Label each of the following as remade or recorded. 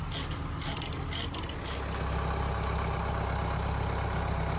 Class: recorded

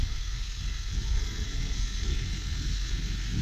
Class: remade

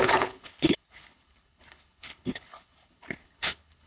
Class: remade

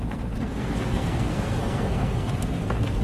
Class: remade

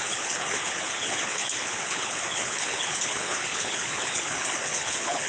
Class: remade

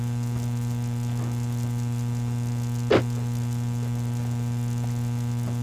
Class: recorded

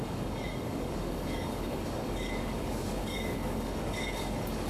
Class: remade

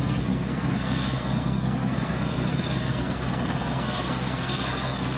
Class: remade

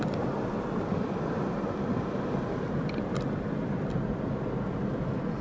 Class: recorded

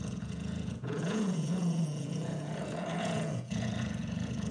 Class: remade